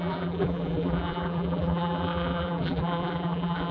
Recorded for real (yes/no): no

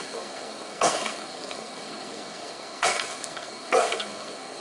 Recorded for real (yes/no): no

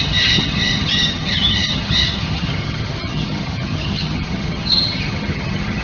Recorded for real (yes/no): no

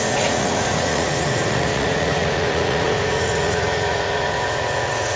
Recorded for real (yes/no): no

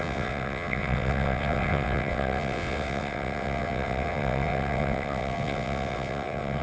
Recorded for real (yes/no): no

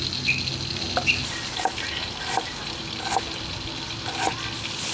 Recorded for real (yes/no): yes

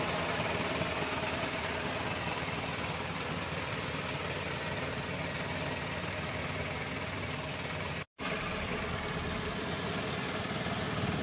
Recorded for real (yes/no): yes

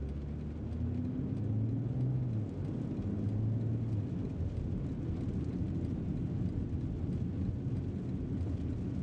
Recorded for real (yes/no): yes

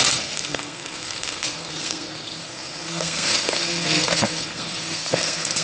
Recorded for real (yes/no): no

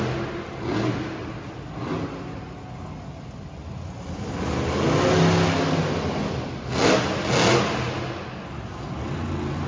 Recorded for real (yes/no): yes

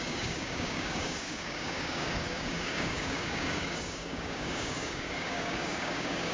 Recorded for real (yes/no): no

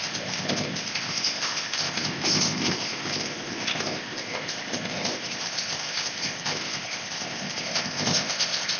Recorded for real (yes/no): no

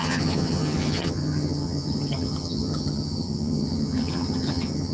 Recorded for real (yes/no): no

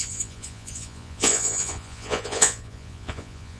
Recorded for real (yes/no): no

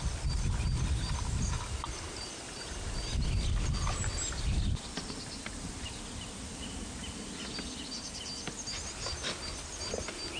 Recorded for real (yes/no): yes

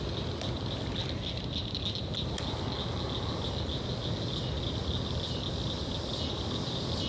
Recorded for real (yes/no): yes